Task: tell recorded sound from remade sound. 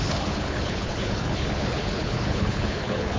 remade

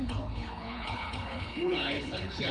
remade